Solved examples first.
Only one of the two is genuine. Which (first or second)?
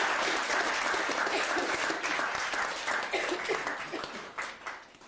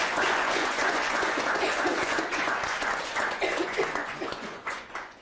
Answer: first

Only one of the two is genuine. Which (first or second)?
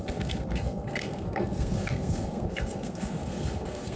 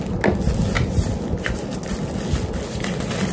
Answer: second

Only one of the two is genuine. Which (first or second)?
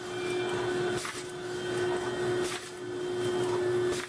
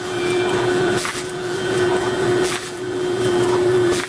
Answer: first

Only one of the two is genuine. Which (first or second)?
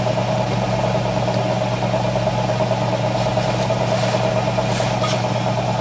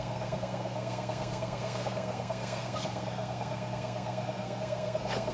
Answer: first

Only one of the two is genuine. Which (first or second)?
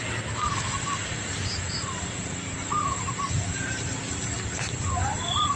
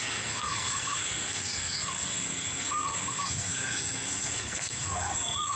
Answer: first